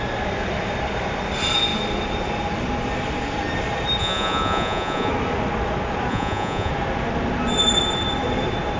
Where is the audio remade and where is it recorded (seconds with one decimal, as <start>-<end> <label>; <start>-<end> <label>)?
0.0-4.0 recorded; 4.0-5.1 remade; 5.1-6.1 recorded; 6.1-6.7 remade; 6.7-8.8 recorded